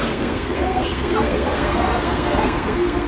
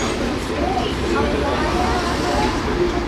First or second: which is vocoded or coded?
first